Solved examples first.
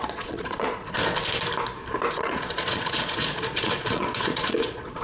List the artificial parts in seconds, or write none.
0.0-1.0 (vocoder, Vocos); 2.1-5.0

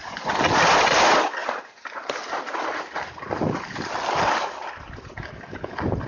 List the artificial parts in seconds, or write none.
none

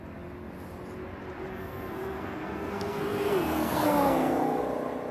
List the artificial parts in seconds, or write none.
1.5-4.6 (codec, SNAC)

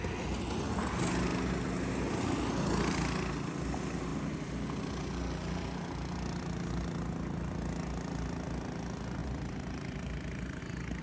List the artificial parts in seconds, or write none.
9.2-10.6 (vocoder, BigVGAN v2)

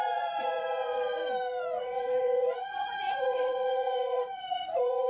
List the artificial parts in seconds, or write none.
0.0-1.2 (vocoder, Vocos); 1.8-5.1

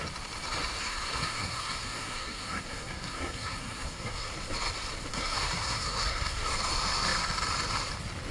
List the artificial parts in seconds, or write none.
0.8-4.3 (codec, SNAC); 5.1-6.5

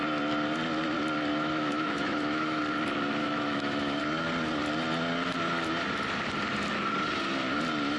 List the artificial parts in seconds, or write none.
1.3-2.6 (autoencoder, DAC-VAE); 3.2-4.0

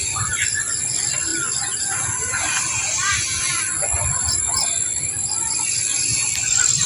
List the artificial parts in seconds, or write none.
none